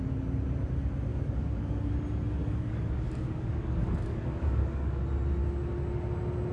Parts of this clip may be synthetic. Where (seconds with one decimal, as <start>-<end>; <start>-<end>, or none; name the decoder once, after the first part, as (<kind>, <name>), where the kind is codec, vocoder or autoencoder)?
1.1-1.9 (codec, DAC); 2.4-5.0